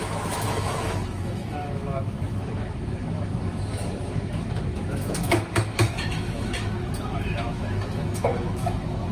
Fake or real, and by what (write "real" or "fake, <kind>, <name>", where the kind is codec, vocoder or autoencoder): fake, autoencoder, DAC-VAE